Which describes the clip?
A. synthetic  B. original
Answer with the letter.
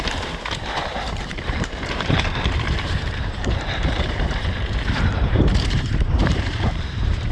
A